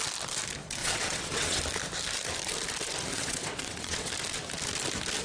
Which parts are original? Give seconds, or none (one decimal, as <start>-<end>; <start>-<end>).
0.0-0.8; 1.6-3.1; 4.1-5.2